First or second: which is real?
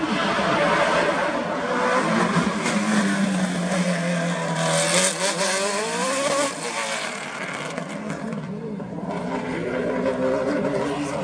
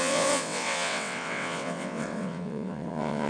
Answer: first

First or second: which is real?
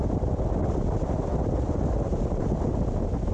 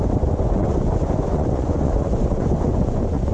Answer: first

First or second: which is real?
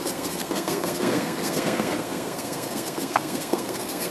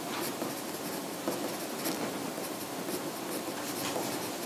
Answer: second